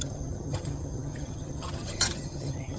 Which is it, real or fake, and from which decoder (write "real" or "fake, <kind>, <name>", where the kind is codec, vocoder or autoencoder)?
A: fake, vocoder, HiFi-GAN